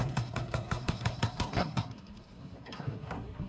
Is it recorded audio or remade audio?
remade